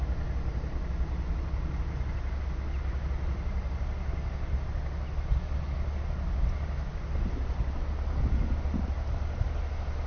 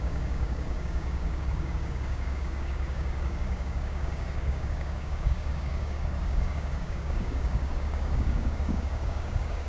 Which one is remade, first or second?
second